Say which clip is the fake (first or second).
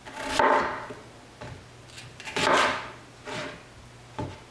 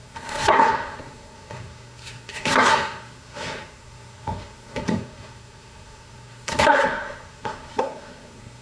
second